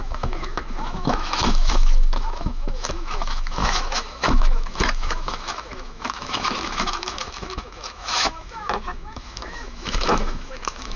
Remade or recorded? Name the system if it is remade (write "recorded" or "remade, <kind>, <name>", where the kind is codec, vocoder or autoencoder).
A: remade, autoencoder, DAC-VAE